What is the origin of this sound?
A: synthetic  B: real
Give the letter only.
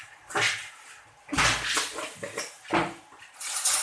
B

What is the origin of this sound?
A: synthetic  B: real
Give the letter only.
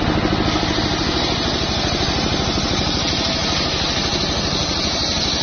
B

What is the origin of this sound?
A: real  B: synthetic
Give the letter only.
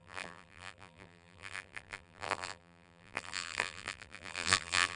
B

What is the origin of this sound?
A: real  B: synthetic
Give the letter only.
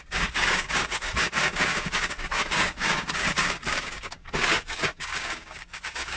B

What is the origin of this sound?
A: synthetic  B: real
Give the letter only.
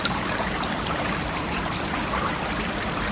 A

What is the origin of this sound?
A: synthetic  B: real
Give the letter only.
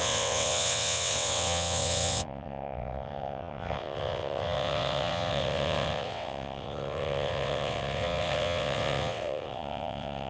A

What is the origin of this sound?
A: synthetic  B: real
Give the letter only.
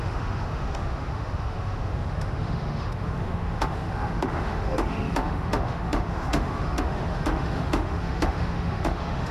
A